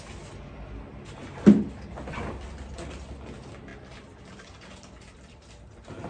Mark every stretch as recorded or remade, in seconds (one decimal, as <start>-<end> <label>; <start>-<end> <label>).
0.0-3.7 recorded; 3.7-6.1 remade